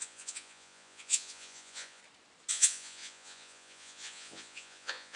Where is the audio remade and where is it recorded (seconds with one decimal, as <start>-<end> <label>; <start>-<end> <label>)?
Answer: 0.0-2.0 remade; 2.0-2.5 recorded; 2.5-5.2 remade